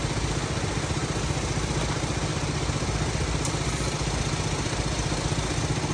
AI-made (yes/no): no